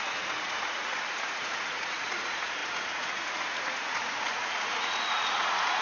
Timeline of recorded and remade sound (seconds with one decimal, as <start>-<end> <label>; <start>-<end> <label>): 0.0-5.8 remade